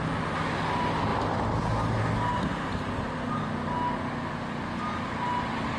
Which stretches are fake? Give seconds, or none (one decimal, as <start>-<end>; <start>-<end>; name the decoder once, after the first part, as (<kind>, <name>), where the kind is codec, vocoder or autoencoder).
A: none

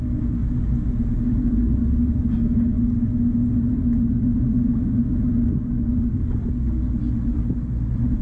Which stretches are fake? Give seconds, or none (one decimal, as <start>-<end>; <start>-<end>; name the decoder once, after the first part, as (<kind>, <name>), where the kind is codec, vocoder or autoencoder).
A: none

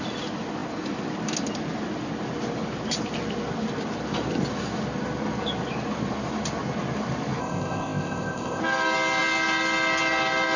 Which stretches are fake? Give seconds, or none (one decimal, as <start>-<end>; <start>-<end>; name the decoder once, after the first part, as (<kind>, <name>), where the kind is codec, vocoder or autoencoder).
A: 7.4-8.6 (codec, ZipCodec)